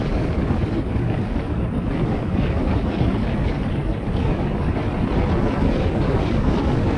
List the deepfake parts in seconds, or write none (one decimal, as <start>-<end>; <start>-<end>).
0.0-4.8; 5.8-7.0